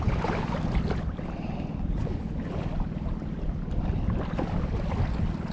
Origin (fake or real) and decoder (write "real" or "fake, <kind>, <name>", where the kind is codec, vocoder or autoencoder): real